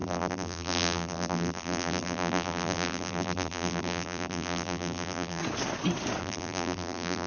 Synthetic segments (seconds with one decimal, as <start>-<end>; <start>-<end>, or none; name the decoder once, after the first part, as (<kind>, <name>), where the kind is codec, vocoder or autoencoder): 0.0-5.4 (vocoder, BigVGAN v2); 6.2-7.3